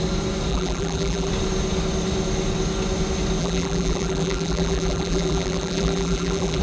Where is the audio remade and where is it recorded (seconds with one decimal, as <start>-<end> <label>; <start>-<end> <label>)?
0.0-0.5 recorded; 0.5-1.3 remade; 1.3-3.4 recorded; 3.4-6.6 remade